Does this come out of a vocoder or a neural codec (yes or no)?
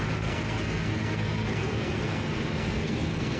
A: yes